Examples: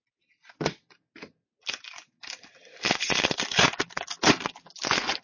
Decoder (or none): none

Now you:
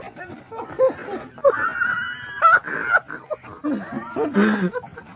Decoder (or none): none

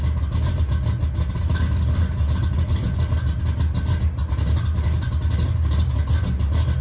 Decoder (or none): none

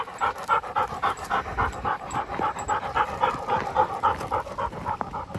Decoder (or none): none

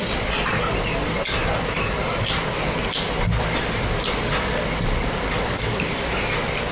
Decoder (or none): none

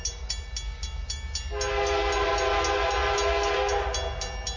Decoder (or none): none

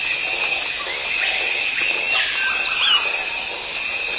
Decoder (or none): none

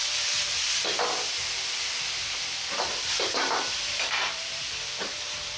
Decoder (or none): vocoder, BigVGAN v2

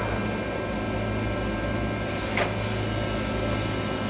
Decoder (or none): none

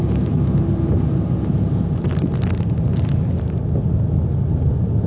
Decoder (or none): none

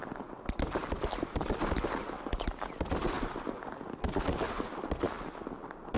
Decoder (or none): none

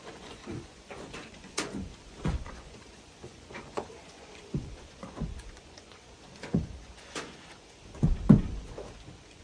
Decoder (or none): vocoder, Vocos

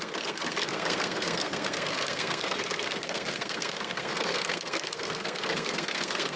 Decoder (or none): codec, SNAC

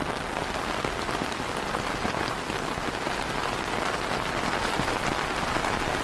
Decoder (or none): none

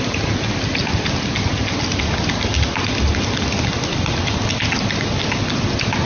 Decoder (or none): none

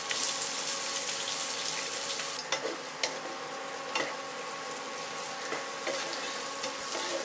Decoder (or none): none